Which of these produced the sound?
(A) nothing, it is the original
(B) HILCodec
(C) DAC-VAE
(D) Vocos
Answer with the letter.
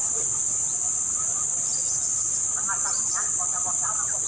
A